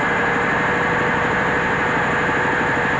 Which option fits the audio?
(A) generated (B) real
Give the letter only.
B